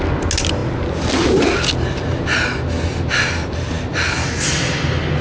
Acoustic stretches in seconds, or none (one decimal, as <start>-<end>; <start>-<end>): 0.0-5.2